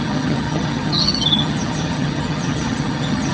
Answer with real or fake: fake